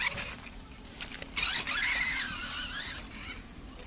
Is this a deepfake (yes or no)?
yes